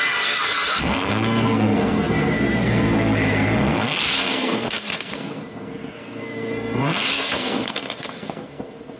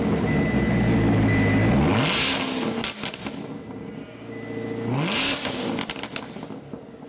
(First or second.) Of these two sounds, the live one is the second